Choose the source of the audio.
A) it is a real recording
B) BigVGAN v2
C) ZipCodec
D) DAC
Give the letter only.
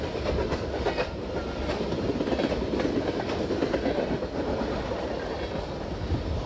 B